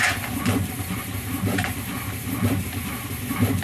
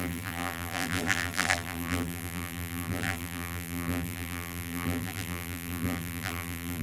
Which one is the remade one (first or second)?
second